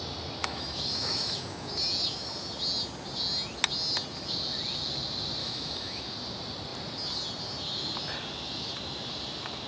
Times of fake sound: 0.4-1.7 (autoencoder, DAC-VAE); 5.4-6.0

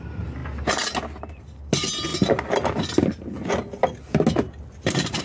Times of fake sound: none

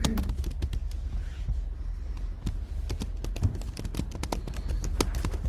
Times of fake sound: none

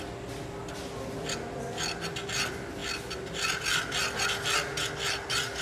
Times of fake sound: none